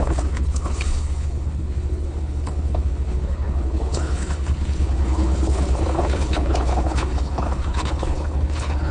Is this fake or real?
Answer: fake